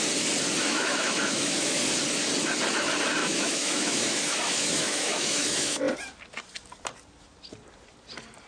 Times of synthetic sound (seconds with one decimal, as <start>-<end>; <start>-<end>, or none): 0.6-1.8; 3.2-5.8